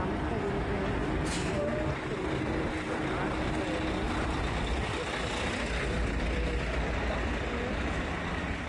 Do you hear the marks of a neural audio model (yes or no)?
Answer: no